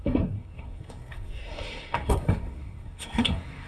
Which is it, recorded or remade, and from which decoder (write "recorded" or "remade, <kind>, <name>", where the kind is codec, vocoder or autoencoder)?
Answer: remade, codec, SNAC